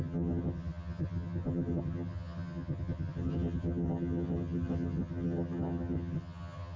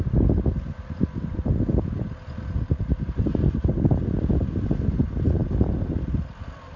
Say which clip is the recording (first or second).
second